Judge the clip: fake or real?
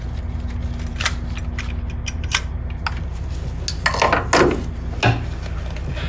real